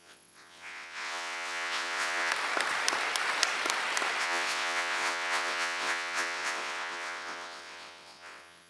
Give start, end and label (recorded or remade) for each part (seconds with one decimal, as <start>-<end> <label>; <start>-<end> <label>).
0.0-2.3 remade; 2.3-4.2 recorded; 4.2-8.7 remade